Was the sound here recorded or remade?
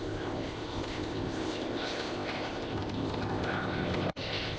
remade